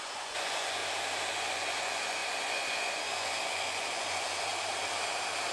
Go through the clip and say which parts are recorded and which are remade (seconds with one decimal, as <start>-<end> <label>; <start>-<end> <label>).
0.0-0.8 remade; 0.8-1.3 recorded; 1.3-4.5 remade; 4.5-5.5 recorded